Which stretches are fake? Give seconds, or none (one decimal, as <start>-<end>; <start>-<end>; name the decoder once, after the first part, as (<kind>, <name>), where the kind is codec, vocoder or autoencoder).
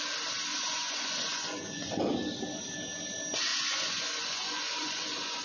0.5-2.0 (vocoder, Vocos); 3.5-5.4